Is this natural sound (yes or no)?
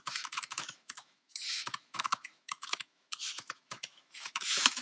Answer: no